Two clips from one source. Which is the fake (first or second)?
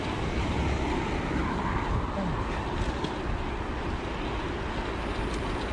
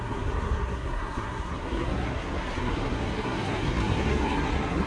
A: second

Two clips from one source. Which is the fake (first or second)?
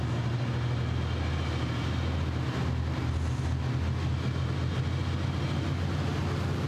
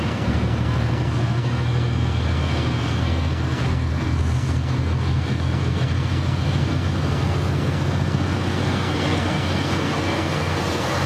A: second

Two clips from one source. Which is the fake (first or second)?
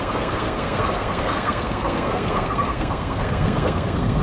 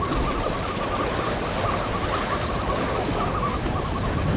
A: first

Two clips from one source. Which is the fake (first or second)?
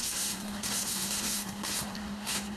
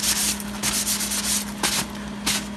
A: first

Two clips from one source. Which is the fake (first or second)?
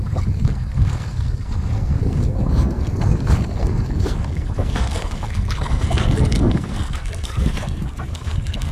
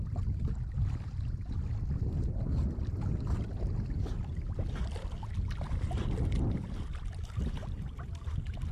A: first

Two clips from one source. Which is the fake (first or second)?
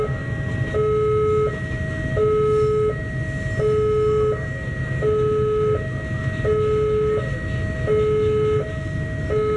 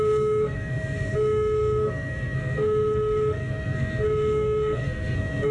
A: second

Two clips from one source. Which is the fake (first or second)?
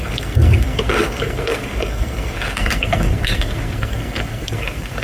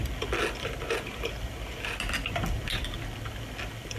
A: first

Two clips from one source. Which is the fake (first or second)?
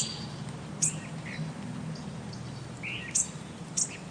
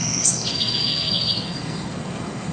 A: second